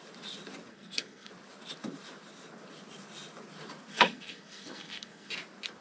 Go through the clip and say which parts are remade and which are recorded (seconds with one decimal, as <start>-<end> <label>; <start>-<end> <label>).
0.0-0.7 recorded; 0.7-1.3 remade; 1.3-3.9 recorded; 3.9-5.3 remade; 5.3-5.8 recorded